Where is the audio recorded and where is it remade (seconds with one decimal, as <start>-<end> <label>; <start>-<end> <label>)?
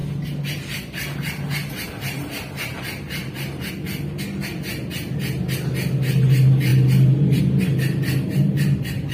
0.0-9.1 recorded